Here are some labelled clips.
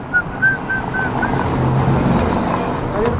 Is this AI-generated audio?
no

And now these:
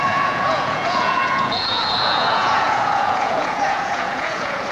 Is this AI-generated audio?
yes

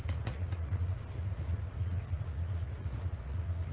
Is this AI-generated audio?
yes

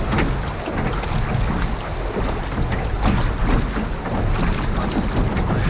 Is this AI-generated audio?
no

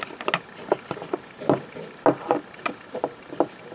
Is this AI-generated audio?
no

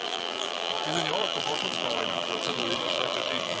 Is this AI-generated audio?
yes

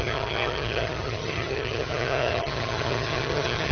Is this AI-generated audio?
yes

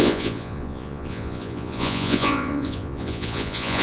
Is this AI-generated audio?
yes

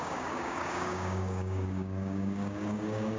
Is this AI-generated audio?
yes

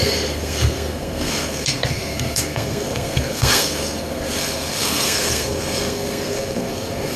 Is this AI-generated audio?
yes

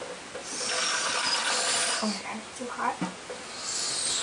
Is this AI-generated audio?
no